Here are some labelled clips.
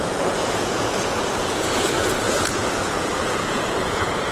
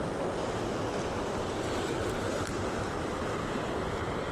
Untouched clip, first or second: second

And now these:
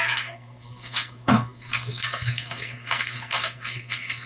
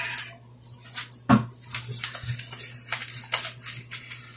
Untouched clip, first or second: second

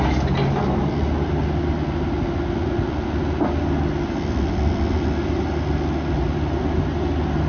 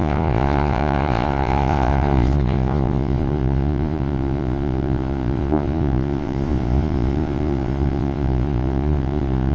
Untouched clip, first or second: first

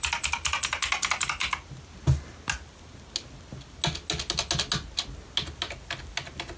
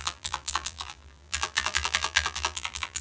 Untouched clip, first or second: first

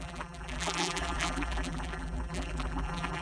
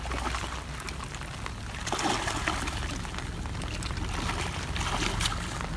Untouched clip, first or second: second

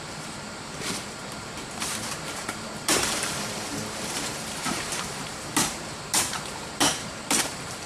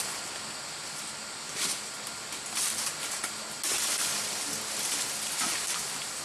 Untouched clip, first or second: second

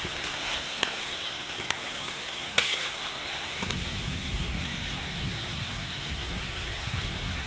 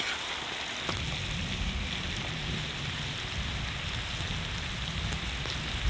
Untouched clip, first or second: second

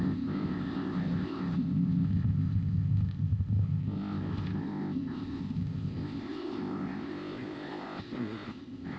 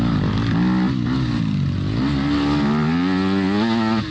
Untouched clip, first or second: second